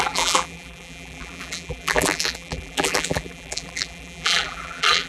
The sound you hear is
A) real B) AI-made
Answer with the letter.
B